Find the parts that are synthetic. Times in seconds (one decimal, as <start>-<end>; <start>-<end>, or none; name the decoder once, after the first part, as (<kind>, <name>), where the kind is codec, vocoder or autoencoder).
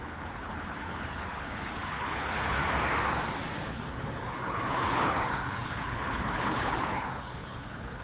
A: 0.0-2.6 (codec, HILCodec); 3.7-8.0